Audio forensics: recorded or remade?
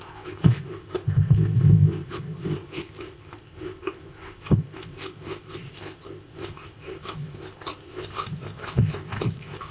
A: remade